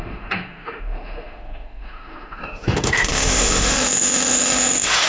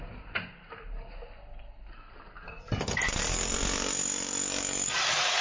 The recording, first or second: second